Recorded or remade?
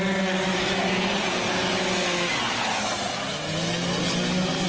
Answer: recorded